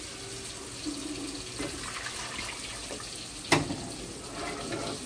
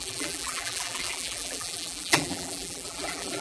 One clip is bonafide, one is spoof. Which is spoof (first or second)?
second